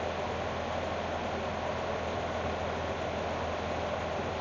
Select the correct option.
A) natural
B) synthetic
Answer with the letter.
A